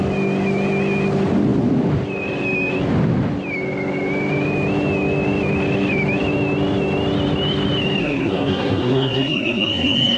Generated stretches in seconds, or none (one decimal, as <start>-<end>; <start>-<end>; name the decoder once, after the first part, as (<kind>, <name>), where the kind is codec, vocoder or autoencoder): 8.0-10.2 (codec, SNAC)